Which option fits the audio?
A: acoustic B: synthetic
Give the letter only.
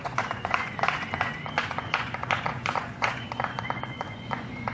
B